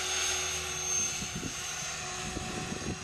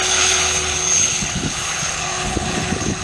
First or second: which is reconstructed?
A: second